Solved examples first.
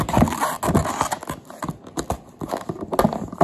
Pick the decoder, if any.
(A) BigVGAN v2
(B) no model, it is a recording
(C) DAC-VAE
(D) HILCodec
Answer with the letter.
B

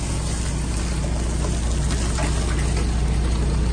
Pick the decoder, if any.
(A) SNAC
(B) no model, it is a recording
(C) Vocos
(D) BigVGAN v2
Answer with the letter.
B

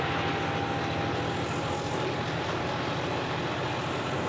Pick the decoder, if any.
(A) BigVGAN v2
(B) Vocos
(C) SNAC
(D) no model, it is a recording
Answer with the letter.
D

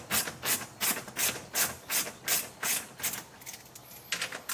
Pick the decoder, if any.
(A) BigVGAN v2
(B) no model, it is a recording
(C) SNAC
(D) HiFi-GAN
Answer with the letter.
B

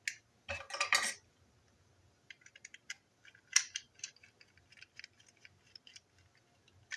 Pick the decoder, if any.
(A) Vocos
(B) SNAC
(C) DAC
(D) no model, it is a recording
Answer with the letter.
D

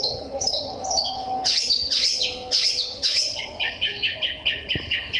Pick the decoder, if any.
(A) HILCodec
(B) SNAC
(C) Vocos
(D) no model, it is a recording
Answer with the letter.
A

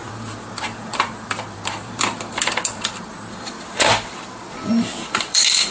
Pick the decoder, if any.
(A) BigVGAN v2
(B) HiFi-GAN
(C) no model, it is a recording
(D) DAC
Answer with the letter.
A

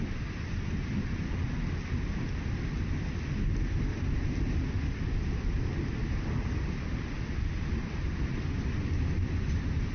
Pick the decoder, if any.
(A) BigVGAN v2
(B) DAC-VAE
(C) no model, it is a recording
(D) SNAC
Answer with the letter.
C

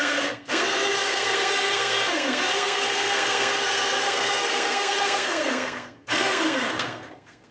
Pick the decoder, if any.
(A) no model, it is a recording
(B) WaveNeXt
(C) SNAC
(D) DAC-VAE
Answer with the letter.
C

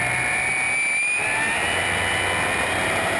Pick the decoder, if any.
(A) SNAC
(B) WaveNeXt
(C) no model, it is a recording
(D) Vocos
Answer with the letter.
C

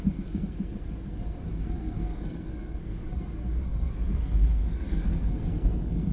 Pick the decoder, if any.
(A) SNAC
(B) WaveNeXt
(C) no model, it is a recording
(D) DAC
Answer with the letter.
A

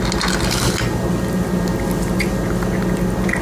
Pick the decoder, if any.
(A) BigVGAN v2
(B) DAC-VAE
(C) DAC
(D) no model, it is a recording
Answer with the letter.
D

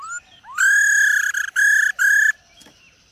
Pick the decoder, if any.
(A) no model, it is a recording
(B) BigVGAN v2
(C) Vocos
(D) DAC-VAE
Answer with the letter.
A